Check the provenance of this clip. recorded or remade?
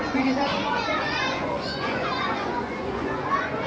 remade